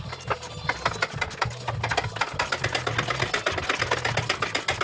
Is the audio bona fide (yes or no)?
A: yes